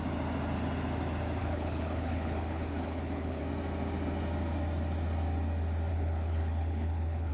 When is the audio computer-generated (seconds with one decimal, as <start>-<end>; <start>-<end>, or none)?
1.4-3.4; 5.9-7.3